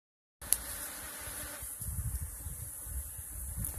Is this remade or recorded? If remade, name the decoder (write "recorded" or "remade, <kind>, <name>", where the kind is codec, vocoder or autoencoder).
recorded